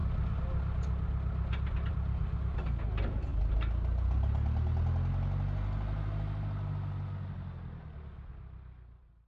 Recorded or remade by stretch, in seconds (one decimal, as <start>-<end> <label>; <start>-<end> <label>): 0.0-9.3 recorded